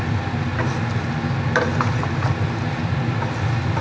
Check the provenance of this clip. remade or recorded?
recorded